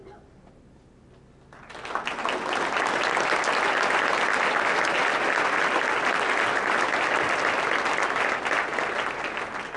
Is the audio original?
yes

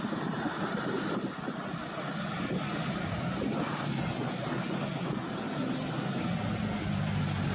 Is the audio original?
yes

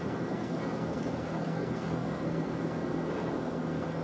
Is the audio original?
no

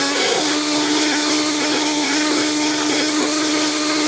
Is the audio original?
no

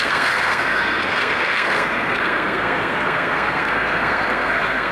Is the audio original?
no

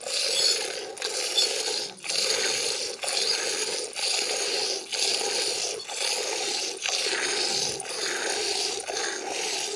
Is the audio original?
yes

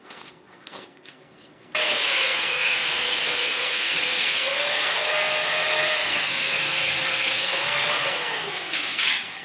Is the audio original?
no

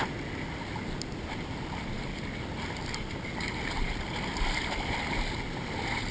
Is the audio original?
yes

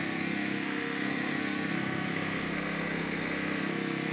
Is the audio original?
no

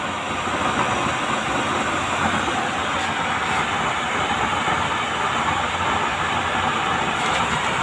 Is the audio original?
yes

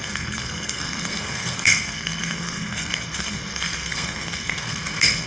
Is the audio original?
no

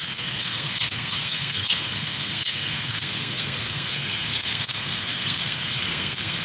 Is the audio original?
no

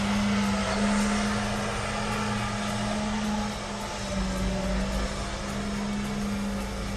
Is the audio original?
yes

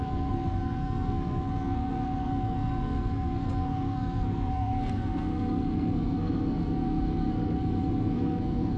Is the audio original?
no